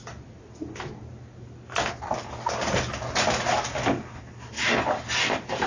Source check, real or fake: real